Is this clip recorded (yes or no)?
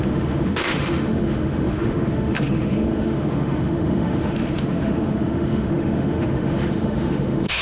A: no